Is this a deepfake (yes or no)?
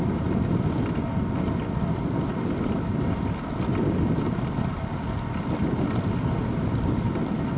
no